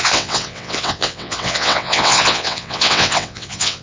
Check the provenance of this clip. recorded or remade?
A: remade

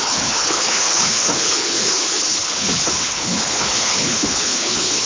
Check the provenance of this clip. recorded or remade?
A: remade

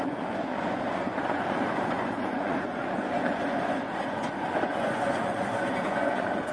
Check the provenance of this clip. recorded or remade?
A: remade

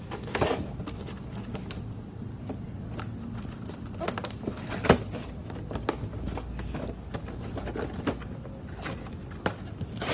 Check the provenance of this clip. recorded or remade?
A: recorded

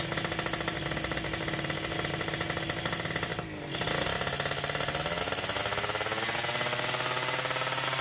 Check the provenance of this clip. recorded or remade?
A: recorded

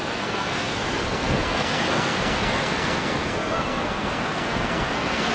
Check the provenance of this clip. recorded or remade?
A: remade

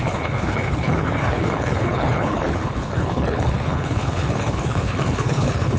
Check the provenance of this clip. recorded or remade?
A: remade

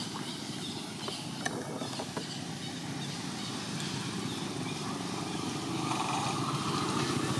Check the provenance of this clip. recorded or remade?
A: recorded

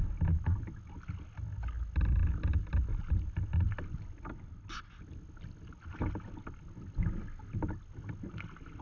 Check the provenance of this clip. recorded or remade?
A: recorded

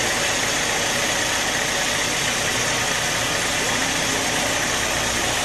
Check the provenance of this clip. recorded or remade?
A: recorded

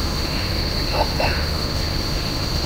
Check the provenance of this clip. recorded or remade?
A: remade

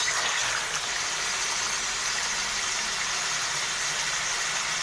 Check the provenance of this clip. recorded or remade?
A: recorded